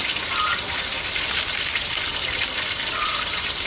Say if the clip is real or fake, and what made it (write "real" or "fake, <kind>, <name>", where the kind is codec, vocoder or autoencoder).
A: real